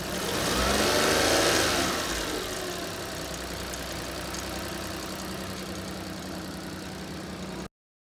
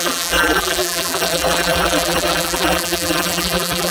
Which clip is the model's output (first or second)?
second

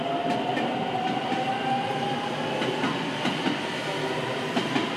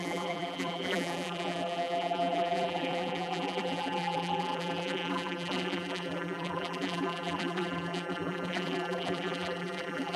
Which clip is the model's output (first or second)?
second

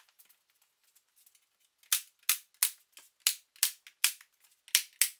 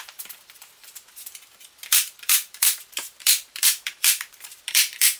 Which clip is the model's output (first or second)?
second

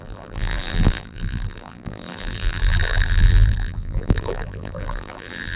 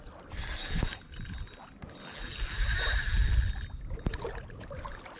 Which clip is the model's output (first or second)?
first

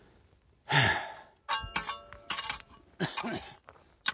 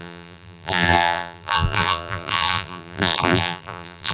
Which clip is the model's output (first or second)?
second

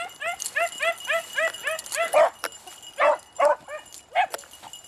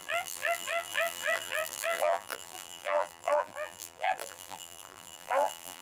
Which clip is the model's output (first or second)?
second